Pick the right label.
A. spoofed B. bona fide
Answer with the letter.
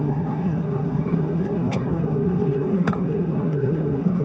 A